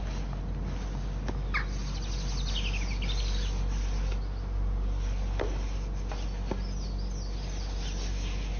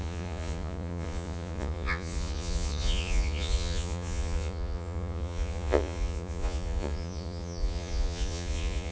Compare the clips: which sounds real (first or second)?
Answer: first